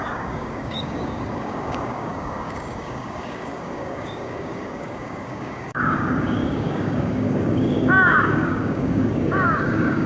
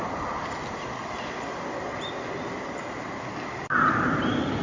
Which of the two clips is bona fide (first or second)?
second